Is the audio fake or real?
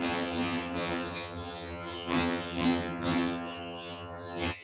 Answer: fake